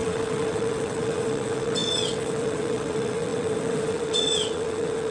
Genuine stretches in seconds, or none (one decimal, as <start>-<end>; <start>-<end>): none